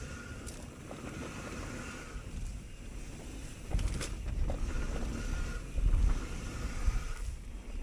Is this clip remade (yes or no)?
no